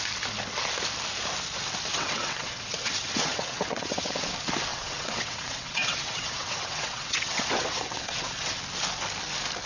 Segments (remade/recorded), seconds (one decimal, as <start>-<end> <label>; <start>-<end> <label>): 0.0-1.9 recorded; 1.9-4.3 remade; 4.3-4.7 recorded; 4.7-8.6 remade; 8.6-9.7 recorded